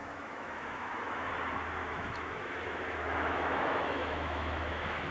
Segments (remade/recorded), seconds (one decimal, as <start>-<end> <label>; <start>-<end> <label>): 0.0-1.3 remade; 1.3-1.8 recorded; 1.8-5.1 remade